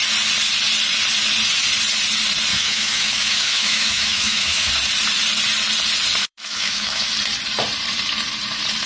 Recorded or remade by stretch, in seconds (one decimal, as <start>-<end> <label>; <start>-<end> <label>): 0.0-2.5 recorded; 2.5-4.7 remade; 4.7-6.2 recorded; 6.2-7.1 remade; 7.1-8.9 recorded